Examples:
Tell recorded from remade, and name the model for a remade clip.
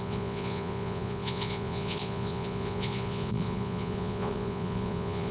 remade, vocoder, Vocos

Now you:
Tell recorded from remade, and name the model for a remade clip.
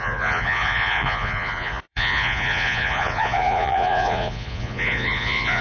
remade, vocoder, Vocos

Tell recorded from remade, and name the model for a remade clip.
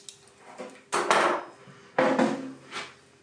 recorded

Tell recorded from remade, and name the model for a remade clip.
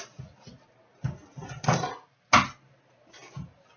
recorded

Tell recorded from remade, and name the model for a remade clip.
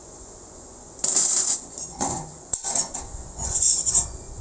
remade, vocoder, Vocos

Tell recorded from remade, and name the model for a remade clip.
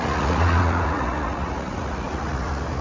remade, vocoder, Vocos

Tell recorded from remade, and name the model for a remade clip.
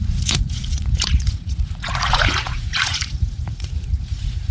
remade, vocoder, Vocos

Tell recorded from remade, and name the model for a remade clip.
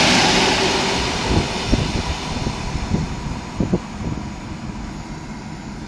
recorded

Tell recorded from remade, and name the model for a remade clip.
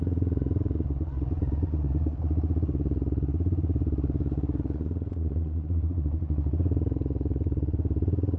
remade, vocoder, Vocos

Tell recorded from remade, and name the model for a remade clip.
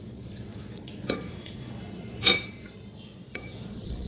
remade, vocoder, Vocos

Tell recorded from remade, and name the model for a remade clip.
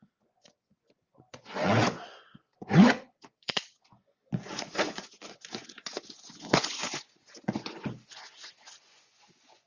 remade, vocoder, Vocos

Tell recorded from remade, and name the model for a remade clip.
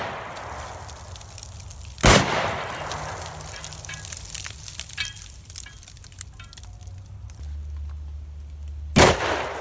recorded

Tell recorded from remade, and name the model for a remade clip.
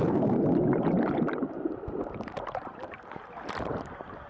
recorded